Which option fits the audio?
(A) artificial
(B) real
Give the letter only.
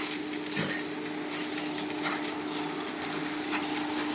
B